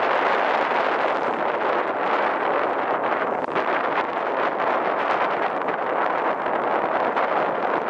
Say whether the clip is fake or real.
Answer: real